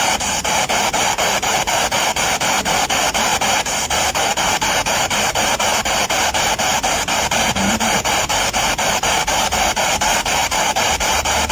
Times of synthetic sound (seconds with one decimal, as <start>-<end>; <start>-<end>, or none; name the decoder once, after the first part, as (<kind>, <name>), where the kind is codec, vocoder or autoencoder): 0.0-5.7 (vocoder, BigVGAN v2); 7.1-11.5